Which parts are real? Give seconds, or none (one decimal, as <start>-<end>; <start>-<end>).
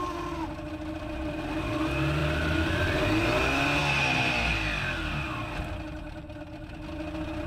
0.0-2.2; 2.9-7.5